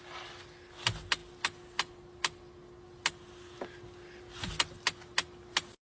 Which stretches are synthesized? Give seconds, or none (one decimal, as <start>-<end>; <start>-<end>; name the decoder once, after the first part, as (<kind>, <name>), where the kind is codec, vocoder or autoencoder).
none